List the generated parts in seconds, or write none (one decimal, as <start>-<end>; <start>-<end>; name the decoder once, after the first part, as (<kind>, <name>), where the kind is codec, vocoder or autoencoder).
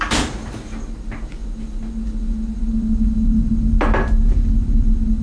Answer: none